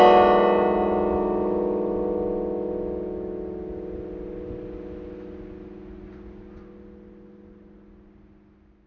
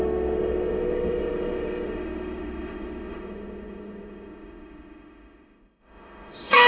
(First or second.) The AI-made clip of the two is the second